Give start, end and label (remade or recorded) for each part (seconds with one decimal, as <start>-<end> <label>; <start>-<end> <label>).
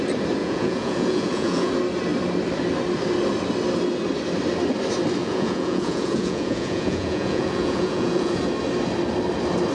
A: 0.0-0.4 recorded; 0.4-1.7 remade; 1.7-5.2 recorded; 5.2-8.4 remade; 8.4-9.7 recorded